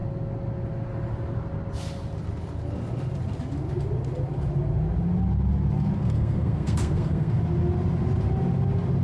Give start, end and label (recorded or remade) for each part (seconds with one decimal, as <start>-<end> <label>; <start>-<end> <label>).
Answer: 0.0-6.0 recorded; 6.0-7.4 remade; 7.4-9.0 recorded